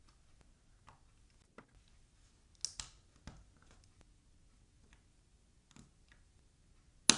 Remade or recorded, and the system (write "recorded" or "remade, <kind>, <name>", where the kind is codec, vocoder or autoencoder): recorded